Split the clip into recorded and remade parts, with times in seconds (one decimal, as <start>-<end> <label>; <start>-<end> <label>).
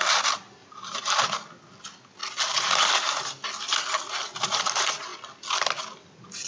0.0-0.6 recorded; 0.6-1.2 remade; 1.2-2.2 recorded; 2.2-3.5 remade; 3.5-6.5 recorded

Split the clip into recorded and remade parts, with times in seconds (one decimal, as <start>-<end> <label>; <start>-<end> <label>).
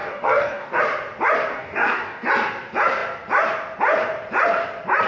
0.0-0.8 remade; 0.8-1.5 recorded; 1.5-2.3 remade; 2.3-5.1 recorded